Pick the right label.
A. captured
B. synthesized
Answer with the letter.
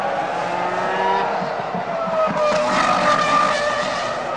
A